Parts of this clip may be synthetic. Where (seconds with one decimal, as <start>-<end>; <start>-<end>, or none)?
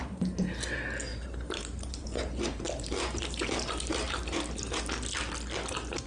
1.1-4.8